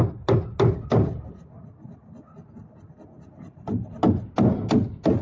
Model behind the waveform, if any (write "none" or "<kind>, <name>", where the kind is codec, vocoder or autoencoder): none